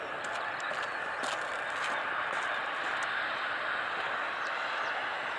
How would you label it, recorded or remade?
recorded